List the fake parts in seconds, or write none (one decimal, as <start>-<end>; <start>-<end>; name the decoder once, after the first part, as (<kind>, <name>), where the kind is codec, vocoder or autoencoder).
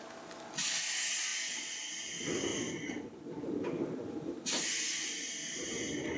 2.5-5.8 (vocoder, BigVGAN v2)